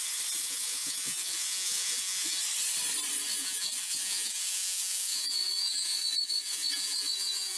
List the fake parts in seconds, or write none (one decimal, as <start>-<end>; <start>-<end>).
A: 0.4-2.4; 3.3-7.6